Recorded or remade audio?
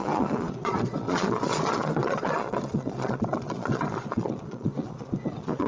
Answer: remade